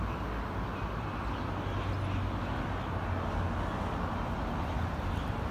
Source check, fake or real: real